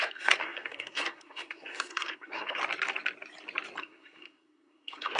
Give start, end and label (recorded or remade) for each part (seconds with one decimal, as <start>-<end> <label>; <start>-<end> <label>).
0.0-2.6 remade; 2.6-3.8 recorded; 3.8-5.2 remade